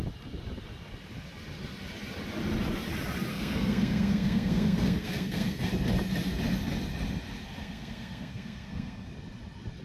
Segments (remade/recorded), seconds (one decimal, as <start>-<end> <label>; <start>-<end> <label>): 0.0-3.3 recorded; 3.3-5.7 remade; 5.7-7.6 recorded; 7.6-9.1 remade; 9.1-9.8 recorded